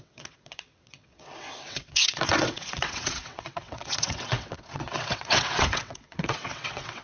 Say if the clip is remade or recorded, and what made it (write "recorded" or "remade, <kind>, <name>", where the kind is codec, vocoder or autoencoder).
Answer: remade, vocoder, WaveNeXt